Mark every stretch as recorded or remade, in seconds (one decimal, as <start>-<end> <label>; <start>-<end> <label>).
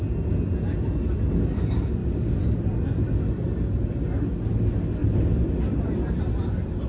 0.0-2.0 recorded; 2.0-3.3 remade; 3.3-5.0 recorded; 5.0-6.2 remade; 6.2-6.9 recorded